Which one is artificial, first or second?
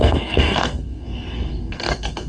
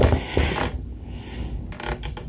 first